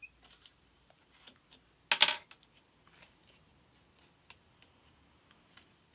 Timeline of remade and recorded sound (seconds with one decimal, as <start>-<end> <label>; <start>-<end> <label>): 0.0-5.9 recorded